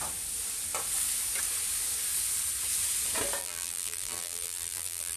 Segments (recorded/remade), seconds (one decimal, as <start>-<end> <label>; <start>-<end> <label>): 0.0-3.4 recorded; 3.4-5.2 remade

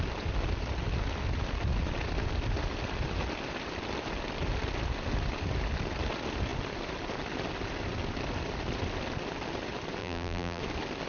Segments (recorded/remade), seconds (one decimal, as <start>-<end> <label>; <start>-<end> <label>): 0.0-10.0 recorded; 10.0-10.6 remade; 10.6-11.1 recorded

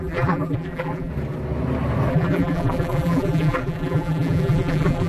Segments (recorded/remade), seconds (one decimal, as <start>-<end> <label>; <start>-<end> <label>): 0.0-1.1 remade; 1.1-2.1 recorded; 2.1-5.1 remade

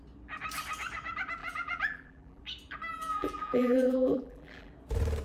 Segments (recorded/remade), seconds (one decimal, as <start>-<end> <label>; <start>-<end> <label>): 0.0-1.4 recorded; 1.4-2.4 remade; 2.4-2.9 recorded; 2.9-4.7 remade; 4.7-5.2 recorded

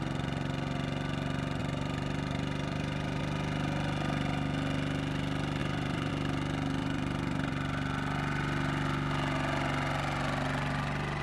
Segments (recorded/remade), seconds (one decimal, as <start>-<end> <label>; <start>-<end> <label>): 0.0-1.6 recorded; 1.6-3.2 remade; 3.2-5.6 recorded; 5.6-6.1 remade; 6.1-6.8 recorded; 6.8-7.5 remade; 7.5-11.2 recorded

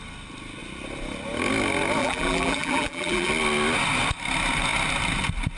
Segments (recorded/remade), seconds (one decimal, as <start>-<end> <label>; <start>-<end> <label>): 0.0-2.0 recorded; 2.0-3.3 remade; 3.3-5.6 recorded

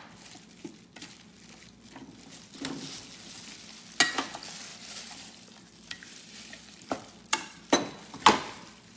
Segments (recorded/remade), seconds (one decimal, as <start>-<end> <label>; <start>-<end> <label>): 0.0-4.7 recorded; 4.7-7.7 remade; 7.7-9.0 recorded

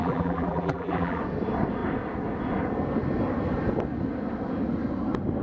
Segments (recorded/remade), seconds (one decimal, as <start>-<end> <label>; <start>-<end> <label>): 0.0-1.2 remade; 1.2-5.4 recorded